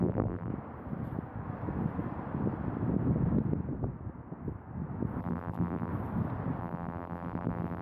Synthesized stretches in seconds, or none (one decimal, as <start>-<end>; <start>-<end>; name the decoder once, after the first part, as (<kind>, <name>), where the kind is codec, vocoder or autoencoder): 0.0-0.5 (vocoder, BigVGAN v2); 5.2-5.9; 6.6-7.8